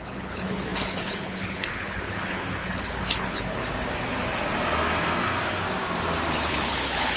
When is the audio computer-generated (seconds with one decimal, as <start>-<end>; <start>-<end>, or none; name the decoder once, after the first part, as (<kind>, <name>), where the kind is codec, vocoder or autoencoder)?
0.0-3.6 (codec, HILCodec); 6.5-7.2